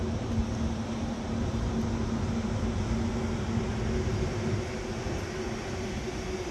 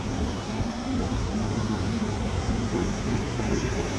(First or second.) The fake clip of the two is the second